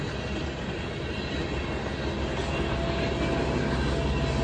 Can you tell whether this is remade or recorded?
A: recorded